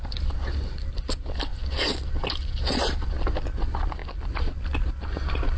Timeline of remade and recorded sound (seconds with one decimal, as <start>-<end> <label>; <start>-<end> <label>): 0.0-5.6 recorded